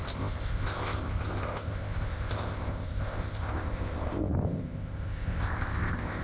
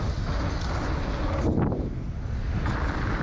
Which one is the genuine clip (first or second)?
second